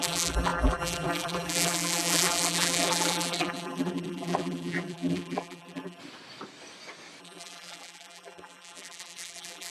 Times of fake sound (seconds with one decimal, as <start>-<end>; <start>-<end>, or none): 0.0-6.0; 7.2-9.7